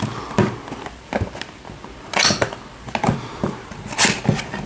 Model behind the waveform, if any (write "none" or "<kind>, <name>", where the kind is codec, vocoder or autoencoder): none